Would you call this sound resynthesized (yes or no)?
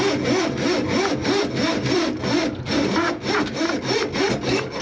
no